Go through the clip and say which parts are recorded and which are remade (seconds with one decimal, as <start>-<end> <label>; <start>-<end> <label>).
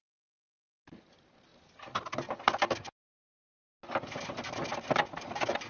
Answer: 0.0-5.7 recorded